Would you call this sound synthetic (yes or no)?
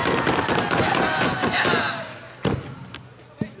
no